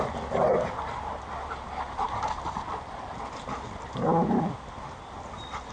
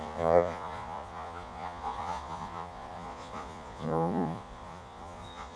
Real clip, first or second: first